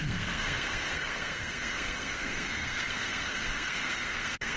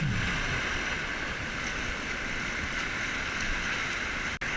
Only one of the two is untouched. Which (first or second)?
second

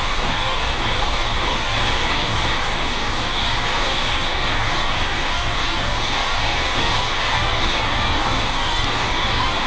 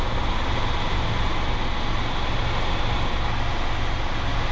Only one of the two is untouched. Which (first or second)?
second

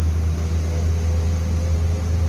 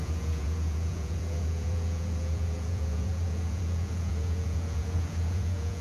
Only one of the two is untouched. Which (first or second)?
first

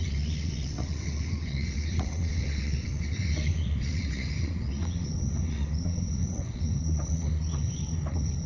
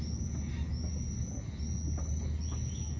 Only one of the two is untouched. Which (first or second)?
second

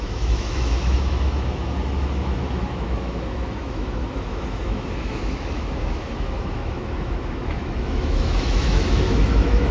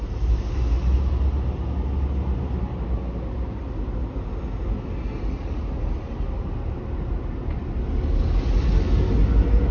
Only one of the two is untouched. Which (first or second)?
second